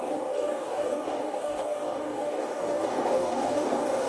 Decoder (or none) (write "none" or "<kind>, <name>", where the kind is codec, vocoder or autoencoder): codec, DAC